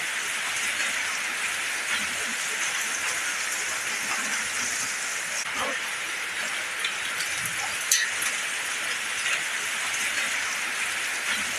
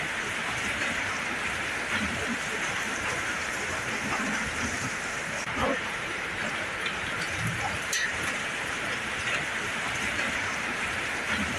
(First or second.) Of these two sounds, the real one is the first